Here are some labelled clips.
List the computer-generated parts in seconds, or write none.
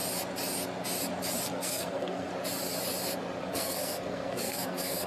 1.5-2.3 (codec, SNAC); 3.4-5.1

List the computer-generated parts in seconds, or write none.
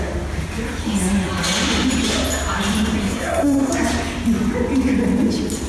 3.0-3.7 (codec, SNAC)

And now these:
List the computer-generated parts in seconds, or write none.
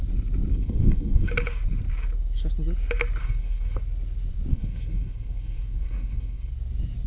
0.5-1.3 (codec, SNAC); 3.2-3.8; 4.5-6.5